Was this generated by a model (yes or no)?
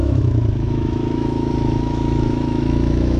yes